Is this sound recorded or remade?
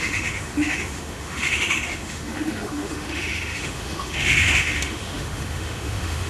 remade